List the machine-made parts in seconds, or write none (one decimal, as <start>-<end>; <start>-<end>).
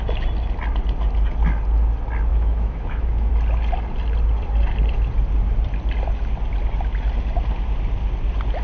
2.3-3.3